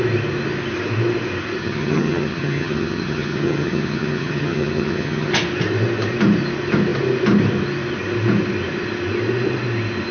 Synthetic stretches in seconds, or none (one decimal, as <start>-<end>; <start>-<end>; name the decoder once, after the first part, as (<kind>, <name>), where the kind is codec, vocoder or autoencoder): 1.6-5.3 (vocoder, HiFi-GAN)

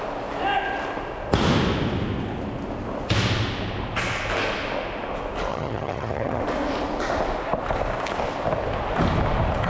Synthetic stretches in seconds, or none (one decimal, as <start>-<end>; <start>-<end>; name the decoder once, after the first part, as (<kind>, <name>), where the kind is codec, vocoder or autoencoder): 5.5-6.4 (vocoder, HiFi-GAN)

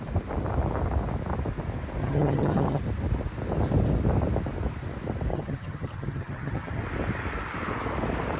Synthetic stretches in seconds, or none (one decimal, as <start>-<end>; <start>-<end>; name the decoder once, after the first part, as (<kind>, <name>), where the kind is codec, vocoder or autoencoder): 2.0-2.8 (vocoder, HiFi-GAN); 5.3-6.8

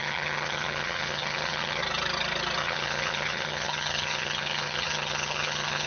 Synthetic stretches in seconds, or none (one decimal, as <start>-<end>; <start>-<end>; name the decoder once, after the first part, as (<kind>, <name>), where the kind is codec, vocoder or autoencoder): 0.0-1.8 (vocoder, HiFi-GAN); 2.6-5.9

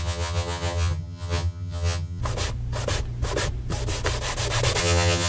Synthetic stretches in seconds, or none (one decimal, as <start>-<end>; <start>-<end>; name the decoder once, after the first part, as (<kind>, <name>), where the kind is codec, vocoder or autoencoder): 0.0-2.2 (vocoder, HiFi-GAN); 4.8-5.3

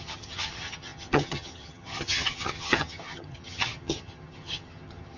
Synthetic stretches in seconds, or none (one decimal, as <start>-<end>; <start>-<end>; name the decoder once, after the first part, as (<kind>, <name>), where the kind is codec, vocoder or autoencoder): 0.0-5.2 (vocoder, HiFi-GAN)